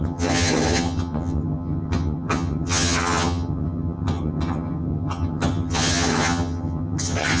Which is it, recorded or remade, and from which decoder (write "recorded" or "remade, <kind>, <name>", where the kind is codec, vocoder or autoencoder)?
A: remade, vocoder, HiFi-GAN